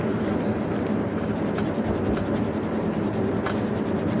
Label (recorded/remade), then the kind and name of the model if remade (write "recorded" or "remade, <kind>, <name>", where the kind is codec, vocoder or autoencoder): recorded